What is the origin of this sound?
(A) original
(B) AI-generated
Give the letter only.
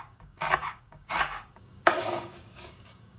B